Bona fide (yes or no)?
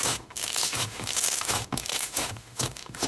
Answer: no